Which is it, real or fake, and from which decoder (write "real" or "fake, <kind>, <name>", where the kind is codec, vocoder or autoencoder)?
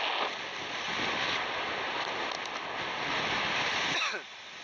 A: real